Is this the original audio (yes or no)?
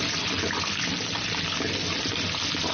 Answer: yes